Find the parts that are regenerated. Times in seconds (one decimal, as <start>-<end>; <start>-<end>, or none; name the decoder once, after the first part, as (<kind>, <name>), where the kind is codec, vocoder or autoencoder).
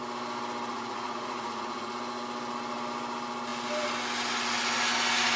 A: 0.7-1.9 (vocoder, Vocos)